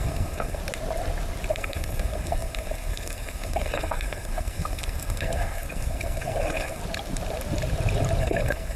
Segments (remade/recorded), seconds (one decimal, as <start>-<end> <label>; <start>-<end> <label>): 0.0-0.6 remade; 0.6-1.5 recorded; 1.5-6.8 remade; 6.8-8.2 recorded; 8.2-8.8 remade